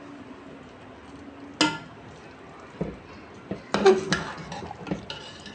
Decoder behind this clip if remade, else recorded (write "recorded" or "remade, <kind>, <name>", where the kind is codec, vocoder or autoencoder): recorded